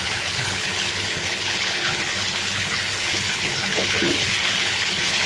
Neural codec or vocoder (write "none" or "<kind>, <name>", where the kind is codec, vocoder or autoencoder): codec, HILCodec